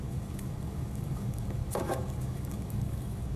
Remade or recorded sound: remade